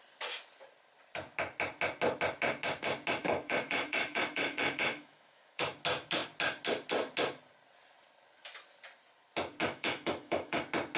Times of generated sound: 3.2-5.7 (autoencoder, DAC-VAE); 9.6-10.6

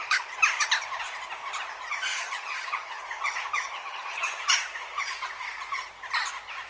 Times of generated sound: 2.1-3.0 (vocoder, HiFi-GAN); 3.7-4.4

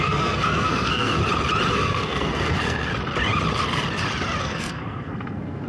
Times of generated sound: 0.0-1.2 (codec, SNAC); 1.7-2.9; 4.4-5.7

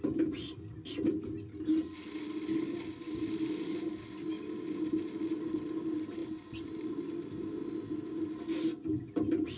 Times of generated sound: none

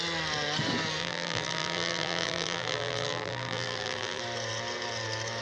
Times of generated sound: 1.0-4.2 (vocoder, BigVGAN v2)

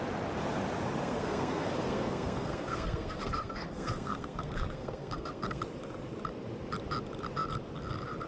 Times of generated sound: 1.0-5.6 (codec, SNAC)

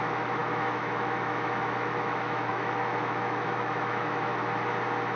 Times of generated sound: 0.0-4.3 (autoencoder, DAC-VAE)